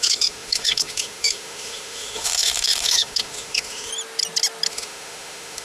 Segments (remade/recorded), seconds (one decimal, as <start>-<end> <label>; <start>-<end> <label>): 0.0-3.9 remade; 3.9-4.7 recorded; 4.7-5.6 remade